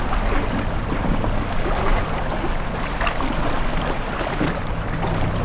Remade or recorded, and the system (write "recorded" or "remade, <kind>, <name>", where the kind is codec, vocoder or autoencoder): recorded